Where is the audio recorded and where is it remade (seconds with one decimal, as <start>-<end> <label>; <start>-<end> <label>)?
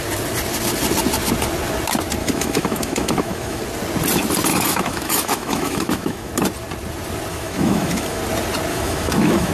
0.0-2.2 recorded; 2.2-3.6 remade; 3.6-4.5 recorded; 4.5-6.3 remade; 6.3-7.3 recorded; 7.3-8.2 remade; 8.2-8.7 recorded; 8.7-9.5 remade